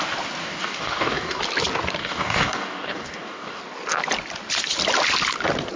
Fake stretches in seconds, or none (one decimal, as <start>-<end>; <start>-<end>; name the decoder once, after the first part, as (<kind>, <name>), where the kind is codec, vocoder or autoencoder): 0.4-1.4 (codec, DAC); 2.0-3.6